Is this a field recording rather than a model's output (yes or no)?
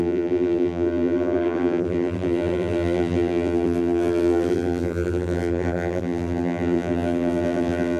no